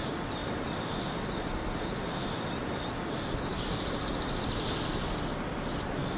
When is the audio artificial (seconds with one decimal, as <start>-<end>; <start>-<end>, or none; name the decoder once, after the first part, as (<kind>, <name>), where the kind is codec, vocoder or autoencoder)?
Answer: 3.5-4.1 (vocoder, BigVGAN v2)